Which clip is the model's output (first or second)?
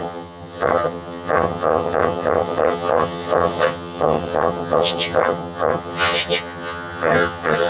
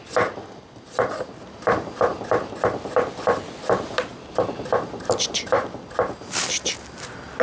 first